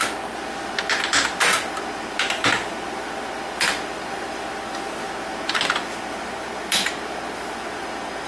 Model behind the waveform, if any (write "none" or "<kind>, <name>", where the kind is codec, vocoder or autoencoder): none